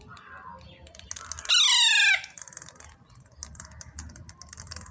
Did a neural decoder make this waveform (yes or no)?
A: no